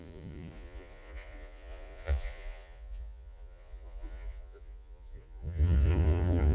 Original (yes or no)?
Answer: no